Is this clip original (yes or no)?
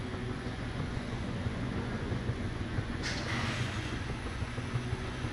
no